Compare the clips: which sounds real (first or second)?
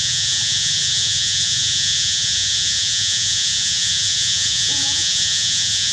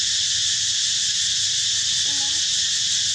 second